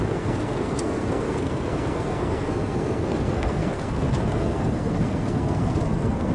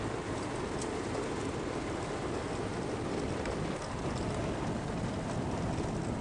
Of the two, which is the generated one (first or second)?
first